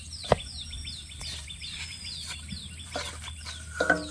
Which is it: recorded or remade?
recorded